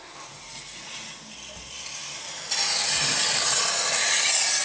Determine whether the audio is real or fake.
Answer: real